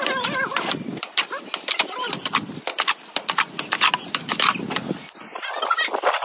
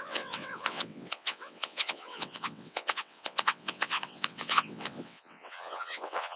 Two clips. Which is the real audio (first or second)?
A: first